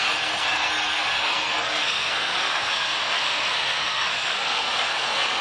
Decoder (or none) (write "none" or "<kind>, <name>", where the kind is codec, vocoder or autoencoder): codec, SNAC